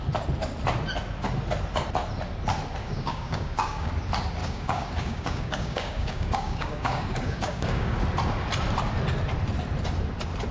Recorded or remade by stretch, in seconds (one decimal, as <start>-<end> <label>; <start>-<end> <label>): 0.0-2.8 recorded; 2.8-3.9 remade; 3.9-4.4 recorded; 4.4-8.0 remade; 8.0-10.5 recorded